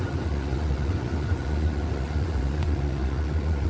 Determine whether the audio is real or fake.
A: fake